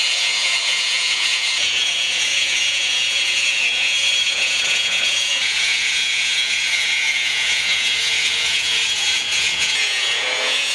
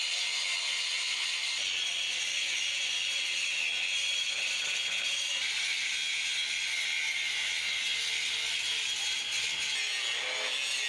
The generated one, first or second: first